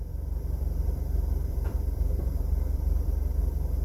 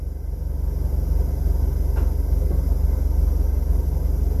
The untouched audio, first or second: second